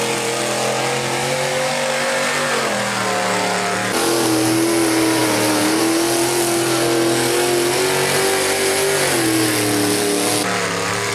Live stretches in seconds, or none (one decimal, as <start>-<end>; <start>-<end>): 0.0-1.2; 1.7-11.1